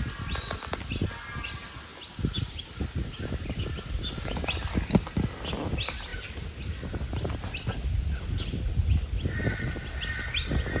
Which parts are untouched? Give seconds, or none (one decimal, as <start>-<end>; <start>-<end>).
0.0-10.8